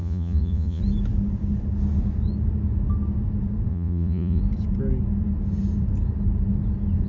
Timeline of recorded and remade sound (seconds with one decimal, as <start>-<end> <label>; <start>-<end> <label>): 0.0-0.8 remade; 0.8-3.7 recorded; 3.7-4.4 remade; 4.4-7.1 recorded